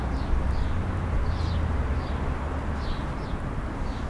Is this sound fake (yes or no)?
no